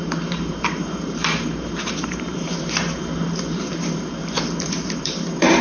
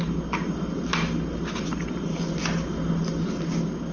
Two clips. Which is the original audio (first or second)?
second